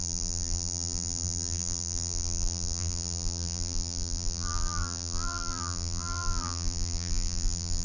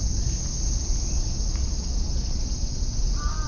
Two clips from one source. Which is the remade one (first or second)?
first